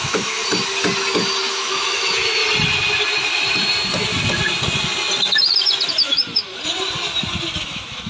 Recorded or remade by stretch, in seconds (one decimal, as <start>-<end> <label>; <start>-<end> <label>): 0.0-0.4 remade; 0.4-1.5 recorded; 1.5-2.4 remade; 2.4-5.9 recorded; 5.9-6.5 remade; 6.5-7.6 recorded; 7.6-8.1 remade